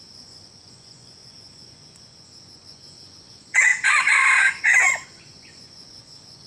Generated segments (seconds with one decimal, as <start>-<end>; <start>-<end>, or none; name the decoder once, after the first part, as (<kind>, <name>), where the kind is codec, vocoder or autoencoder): 0.0-6.5 (vocoder, Vocos)